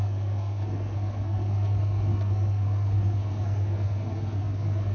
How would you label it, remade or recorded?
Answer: remade